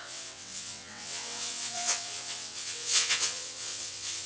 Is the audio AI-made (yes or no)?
yes